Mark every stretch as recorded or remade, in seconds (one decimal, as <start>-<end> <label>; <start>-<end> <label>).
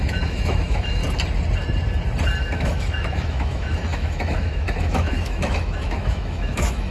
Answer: 0.0-1.0 remade; 1.0-2.4 recorded; 2.4-6.9 remade